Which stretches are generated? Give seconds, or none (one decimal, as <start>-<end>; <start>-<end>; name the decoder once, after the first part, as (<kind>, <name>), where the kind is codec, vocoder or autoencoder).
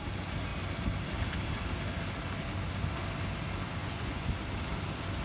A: 3.8-4.3 (vocoder, Vocos)